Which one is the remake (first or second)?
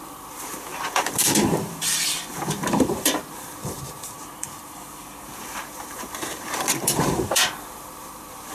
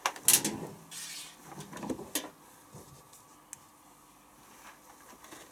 first